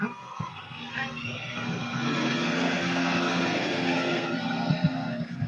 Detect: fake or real fake